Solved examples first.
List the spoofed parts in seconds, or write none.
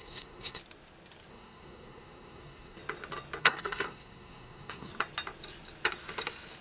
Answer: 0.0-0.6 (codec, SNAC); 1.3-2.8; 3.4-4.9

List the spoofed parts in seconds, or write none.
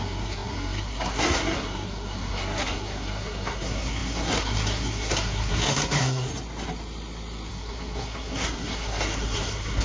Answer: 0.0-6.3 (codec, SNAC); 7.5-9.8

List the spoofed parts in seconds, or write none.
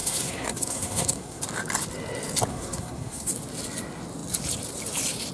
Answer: 0.0-1.4 (codec, SNAC); 2.5-3.3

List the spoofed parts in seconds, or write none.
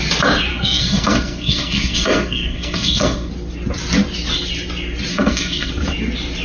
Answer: 0.5-3.3 (codec, SNAC); 5.1-5.7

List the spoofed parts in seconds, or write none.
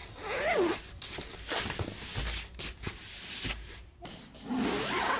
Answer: none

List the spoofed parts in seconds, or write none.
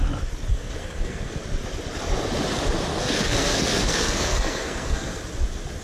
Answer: 0.5-1.4 (codec, SNAC); 2.9-5.2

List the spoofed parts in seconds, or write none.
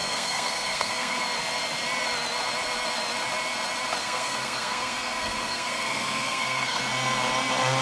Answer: 0.0-1.2 (codec, SNAC); 4.0-6.8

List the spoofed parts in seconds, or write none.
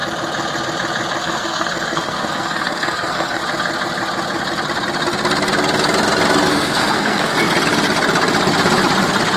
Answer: 1.2-3.4 (codec, SNAC); 6.5-7.3